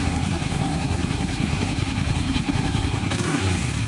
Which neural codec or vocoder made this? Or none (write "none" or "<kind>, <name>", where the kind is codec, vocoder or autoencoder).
codec, SNAC